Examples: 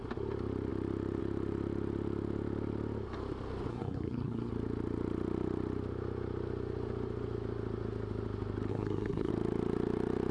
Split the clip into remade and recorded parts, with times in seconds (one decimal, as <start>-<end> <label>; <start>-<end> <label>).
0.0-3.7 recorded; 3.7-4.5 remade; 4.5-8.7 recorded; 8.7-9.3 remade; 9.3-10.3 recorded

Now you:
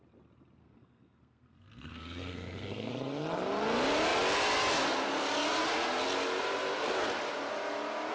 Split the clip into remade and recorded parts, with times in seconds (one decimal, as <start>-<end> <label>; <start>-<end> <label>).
0.0-0.6 recorded; 0.6-2.9 remade; 2.9-8.1 recorded

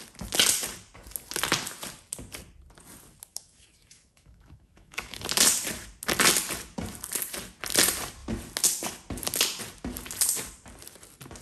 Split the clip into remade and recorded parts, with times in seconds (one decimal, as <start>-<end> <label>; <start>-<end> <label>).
0.0-3.3 recorded; 3.3-5.2 remade; 5.2-11.4 recorded